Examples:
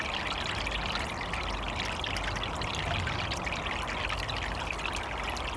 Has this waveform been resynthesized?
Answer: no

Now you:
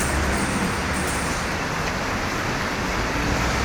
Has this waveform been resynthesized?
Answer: no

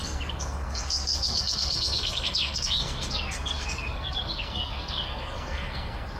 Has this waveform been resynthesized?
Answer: yes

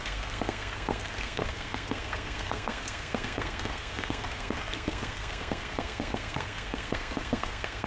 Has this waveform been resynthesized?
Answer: yes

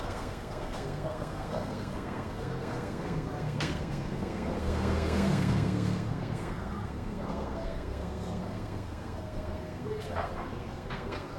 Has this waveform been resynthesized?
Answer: yes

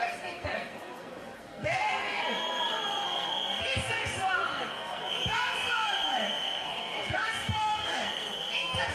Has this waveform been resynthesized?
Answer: yes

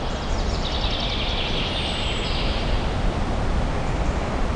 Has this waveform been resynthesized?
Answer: no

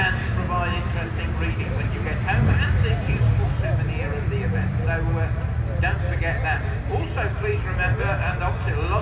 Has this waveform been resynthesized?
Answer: no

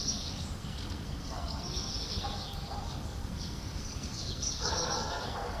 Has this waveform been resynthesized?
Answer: yes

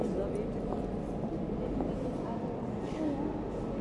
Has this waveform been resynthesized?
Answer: no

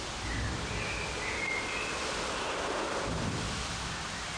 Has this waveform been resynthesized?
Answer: no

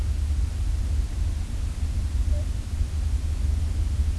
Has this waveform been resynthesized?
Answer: no